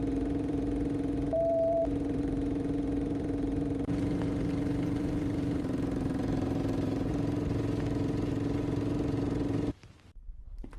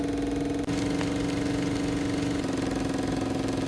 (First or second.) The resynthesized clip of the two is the first